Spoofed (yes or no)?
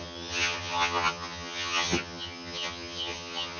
yes